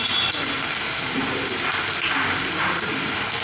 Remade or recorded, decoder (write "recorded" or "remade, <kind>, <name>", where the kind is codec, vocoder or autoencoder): recorded